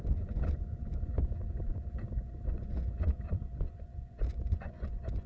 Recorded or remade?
remade